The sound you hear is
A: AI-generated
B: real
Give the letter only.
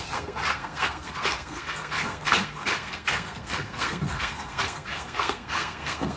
A